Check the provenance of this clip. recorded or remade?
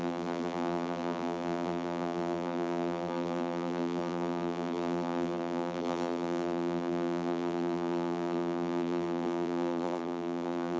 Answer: remade